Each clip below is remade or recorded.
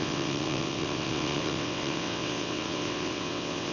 remade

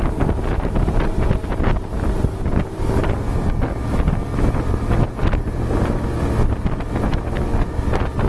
recorded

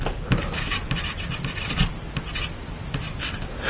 recorded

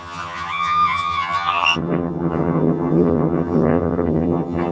remade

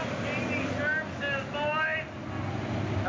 recorded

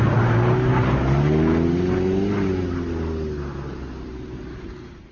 recorded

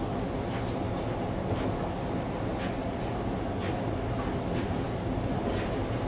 recorded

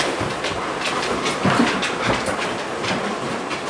recorded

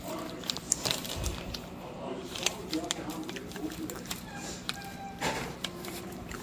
remade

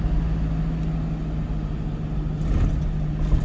recorded